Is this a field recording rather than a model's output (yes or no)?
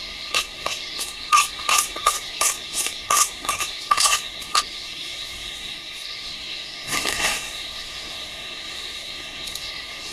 no